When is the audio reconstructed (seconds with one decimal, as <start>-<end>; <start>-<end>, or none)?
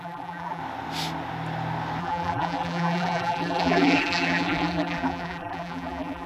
0.0-0.6; 2.0-6.3